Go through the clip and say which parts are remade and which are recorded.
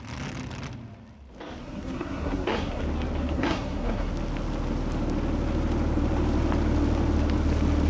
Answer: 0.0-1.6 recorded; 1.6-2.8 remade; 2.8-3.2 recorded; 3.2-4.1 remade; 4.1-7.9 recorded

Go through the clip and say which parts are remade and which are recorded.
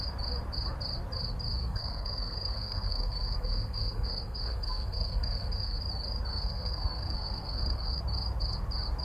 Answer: 0.0-1.6 recorded; 1.6-5.8 remade; 5.8-6.3 recorded; 6.3-8.0 remade; 8.0-9.0 recorded